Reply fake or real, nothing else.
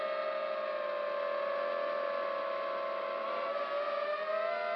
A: real